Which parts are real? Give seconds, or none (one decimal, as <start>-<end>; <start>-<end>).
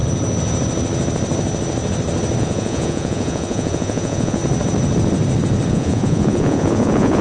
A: 0.0-2.4; 4.4-5.7